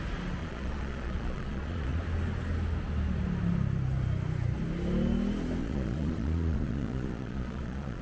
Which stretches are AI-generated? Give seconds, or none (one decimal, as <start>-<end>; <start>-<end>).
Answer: 0.4-2.0; 5.6-8.0

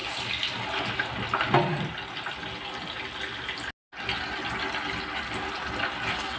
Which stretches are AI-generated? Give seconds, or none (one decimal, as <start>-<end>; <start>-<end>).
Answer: none

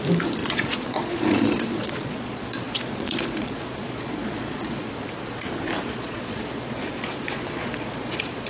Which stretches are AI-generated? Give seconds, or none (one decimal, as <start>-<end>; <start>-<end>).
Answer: 0.4-4.9; 5.9-8.5

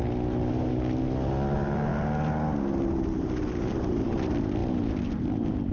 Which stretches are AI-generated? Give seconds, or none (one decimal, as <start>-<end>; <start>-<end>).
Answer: none

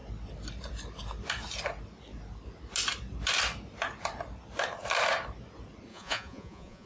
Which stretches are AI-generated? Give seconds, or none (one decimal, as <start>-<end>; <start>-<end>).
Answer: 5.9-6.9